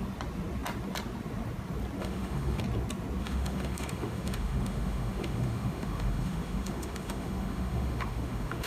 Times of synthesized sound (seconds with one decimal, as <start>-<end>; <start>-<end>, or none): 2.0-2.6; 3.2-8.7